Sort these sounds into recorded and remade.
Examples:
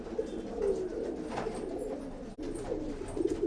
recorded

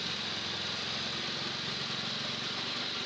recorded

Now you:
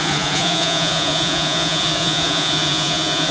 remade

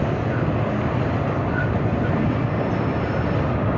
recorded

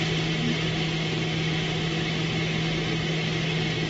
recorded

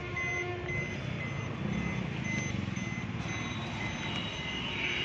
recorded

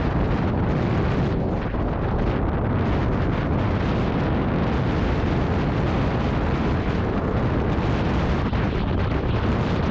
recorded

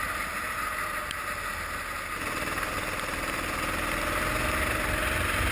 recorded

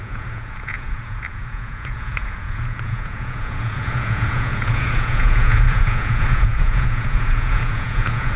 remade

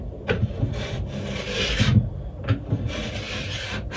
recorded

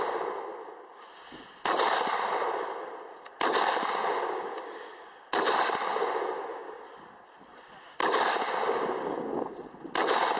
recorded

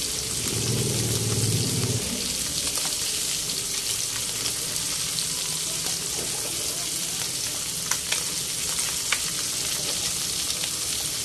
recorded